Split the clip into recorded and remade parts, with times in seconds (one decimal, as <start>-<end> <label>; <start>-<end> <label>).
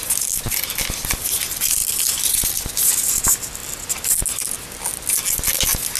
0.0-6.0 recorded